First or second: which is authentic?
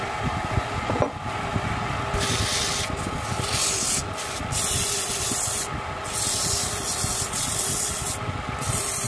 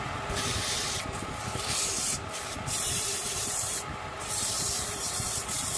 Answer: first